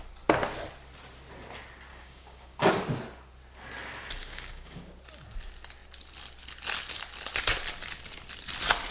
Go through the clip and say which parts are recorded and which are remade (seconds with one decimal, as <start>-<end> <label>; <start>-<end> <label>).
0.0-1.9 recorded; 1.9-2.7 remade; 2.7-4.2 recorded; 4.2-4.8 remade; 4.8-8.9 recorded